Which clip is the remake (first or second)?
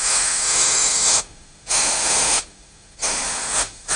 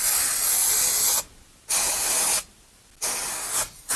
first